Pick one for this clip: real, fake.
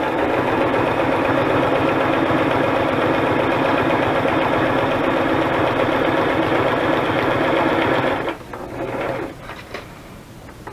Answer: real